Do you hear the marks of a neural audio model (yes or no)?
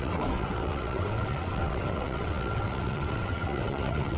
yes